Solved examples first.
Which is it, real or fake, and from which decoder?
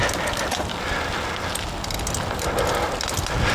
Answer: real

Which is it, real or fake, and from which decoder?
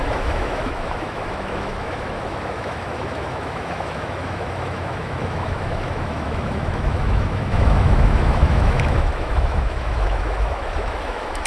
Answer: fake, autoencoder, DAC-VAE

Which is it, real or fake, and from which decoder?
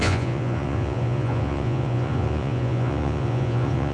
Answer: fake, vocoder, Vocos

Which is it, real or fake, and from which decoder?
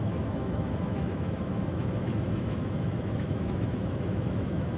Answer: fake, autoencoder, DAC-VAE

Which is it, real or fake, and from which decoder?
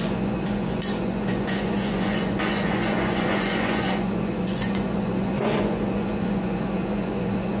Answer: fake, vocoder, Vocos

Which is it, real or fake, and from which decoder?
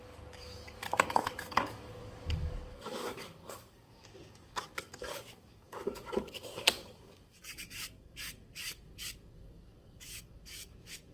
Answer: fake, codec, DAC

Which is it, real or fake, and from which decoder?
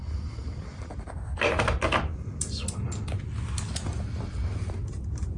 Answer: real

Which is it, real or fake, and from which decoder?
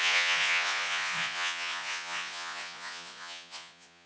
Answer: fake, vocoder, Vocos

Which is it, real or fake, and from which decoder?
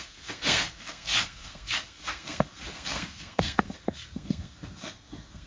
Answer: fake, codec, SNAC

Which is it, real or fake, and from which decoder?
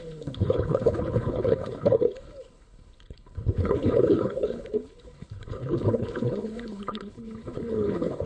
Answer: fake, codec, HILCodec